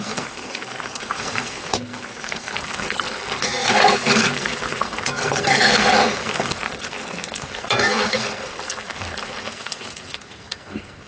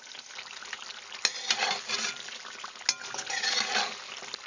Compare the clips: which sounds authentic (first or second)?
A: second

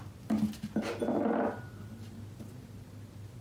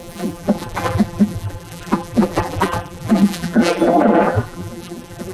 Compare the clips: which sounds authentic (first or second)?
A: first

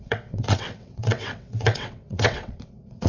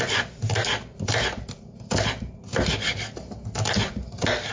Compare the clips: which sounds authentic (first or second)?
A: second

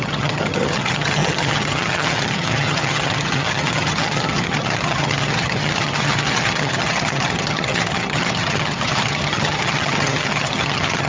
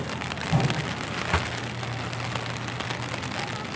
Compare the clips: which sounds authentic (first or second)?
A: second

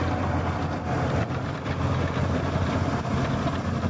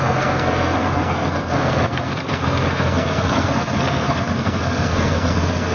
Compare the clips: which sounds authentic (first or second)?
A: first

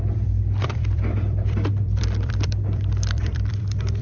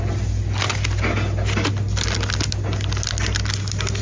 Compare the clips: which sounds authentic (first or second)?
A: second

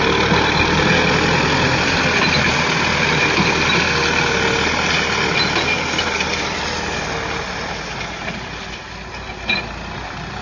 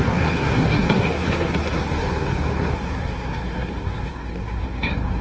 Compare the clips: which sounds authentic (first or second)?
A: first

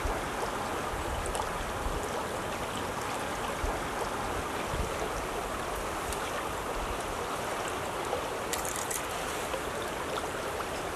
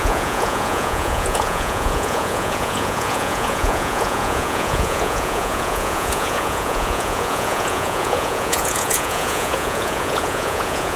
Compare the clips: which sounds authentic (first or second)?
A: first